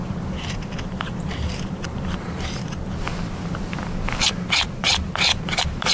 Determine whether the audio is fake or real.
fake